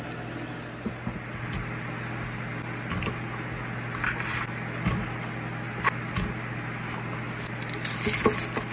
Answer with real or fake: real